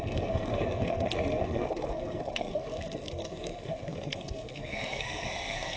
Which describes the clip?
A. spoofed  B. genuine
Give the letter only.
A